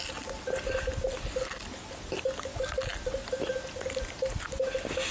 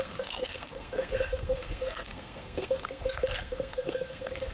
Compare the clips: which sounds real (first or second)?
first